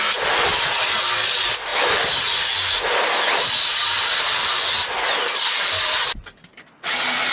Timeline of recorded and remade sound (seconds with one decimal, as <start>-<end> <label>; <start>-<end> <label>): 0.0-7.3 recorded